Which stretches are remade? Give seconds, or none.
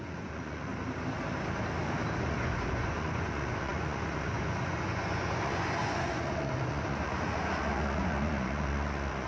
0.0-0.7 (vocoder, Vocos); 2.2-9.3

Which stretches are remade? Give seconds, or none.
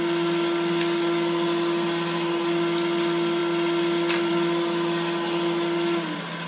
none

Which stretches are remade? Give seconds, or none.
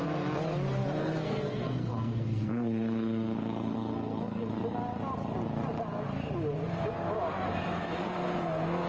1.0-4.5 (codec, SNAC)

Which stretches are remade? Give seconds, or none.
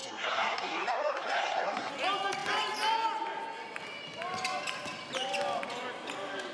0.0-1.9 (codec, SNAC)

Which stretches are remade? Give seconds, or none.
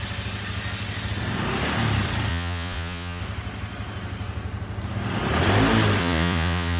2.3-3.2 (vocoder, Vocos); 6.0-6.8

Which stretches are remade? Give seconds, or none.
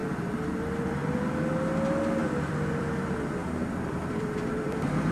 0.0-1.5 (vocoder, BigVGAN v2); 2.2-2.9; 3.4-5.1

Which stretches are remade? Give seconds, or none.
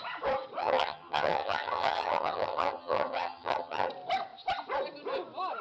0.6-3.9 (vocoder, HiFi-GAN)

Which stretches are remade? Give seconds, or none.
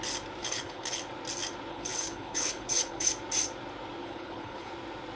0.4-1.0 (codec, HILCodec); 1.7-3.1; 4.0-4.7